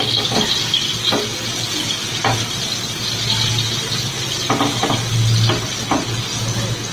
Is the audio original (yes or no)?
yes